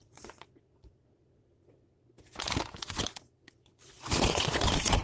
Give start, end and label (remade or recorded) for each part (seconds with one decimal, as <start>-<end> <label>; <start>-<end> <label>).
0.0-2.0 remade; 2.0-2.8 recorded; 2.8-5.0 remade